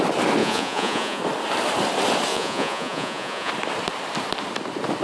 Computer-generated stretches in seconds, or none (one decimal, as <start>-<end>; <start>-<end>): 0.4-1.2; 2.3-3.5